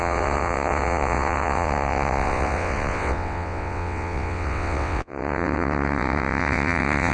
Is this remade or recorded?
remade